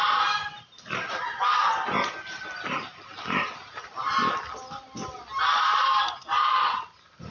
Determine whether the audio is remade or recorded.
recorded